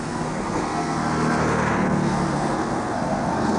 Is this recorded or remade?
remade